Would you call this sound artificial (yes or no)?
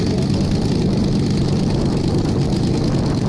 no